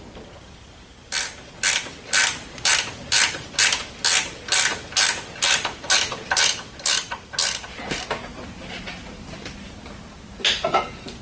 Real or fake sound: real